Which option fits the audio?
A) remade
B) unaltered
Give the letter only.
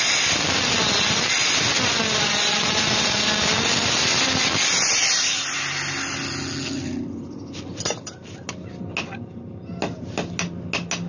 B